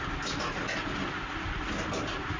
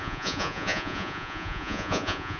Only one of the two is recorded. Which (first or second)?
first